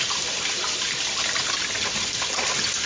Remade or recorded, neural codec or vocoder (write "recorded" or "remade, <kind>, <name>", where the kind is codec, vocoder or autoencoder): recorded